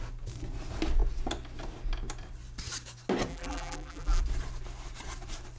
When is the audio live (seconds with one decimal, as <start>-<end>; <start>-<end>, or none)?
0.0-3.3; 4.2-5.6